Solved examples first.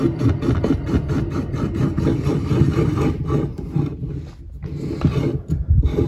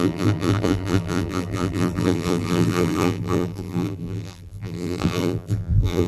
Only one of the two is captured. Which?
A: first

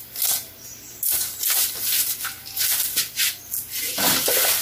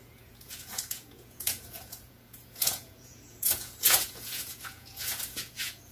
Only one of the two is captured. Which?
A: first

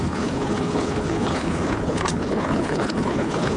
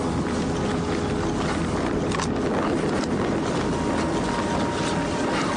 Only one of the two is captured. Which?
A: second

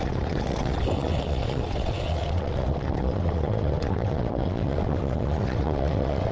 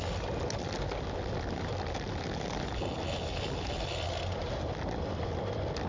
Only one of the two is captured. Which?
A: second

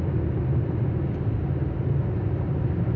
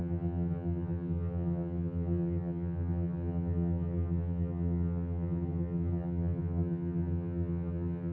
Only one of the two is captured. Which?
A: first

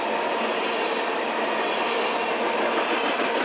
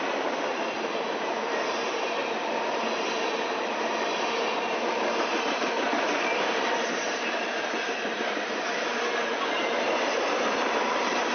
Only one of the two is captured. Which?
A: first